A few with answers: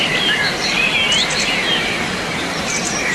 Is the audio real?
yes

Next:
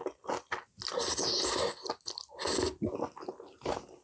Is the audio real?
yes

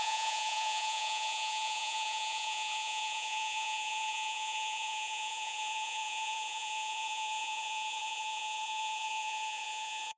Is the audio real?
no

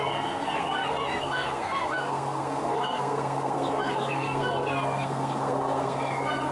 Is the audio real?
no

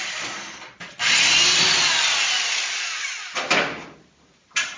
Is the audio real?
yes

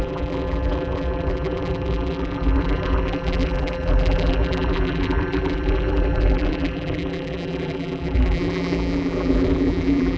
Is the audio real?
no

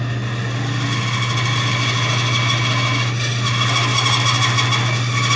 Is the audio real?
yes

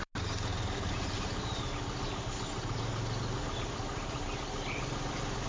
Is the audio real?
yes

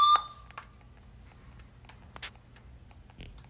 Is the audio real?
yes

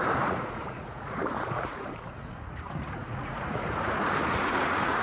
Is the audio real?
no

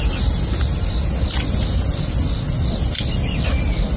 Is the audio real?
yes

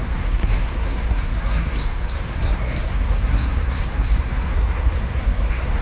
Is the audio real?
no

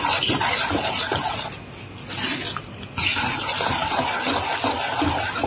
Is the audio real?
yes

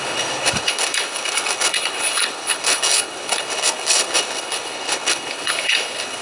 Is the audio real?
no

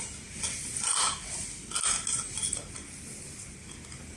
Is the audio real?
yes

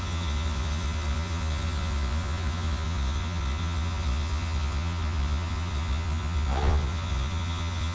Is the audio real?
no